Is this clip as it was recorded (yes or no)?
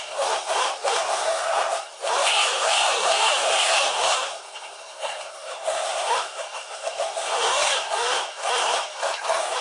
no